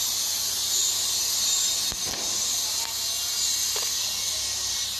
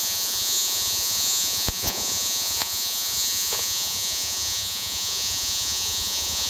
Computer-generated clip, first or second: second